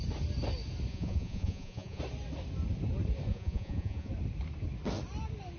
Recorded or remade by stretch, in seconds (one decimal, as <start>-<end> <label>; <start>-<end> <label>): 0.0-0.9 recorded; 0.9-2.0 remade; 2.0-3.3 recorded; 3.3-4.1 remade; 4.1-5.6 recorded

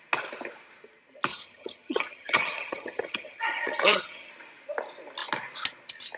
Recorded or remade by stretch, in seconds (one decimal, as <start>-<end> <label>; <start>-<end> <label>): 0.0-1.3 recorded; 1.3-4.3 remade; 4.3-6.2 recorded

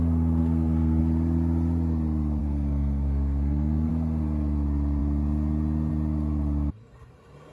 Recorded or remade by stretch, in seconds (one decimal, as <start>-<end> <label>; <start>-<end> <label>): 0.0-0.4 recorded; 0.4-1.0 remade; 1.0-2.4 recorded; 2.4-3.9 remade; 3.9-7.5 recorded

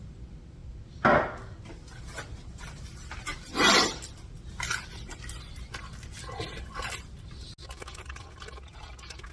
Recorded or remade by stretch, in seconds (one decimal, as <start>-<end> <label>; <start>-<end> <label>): 0.0-9.3 recorded